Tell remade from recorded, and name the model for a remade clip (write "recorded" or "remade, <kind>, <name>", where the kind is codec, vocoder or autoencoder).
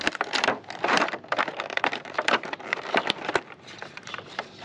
remade, vocoder, BigVGAN v2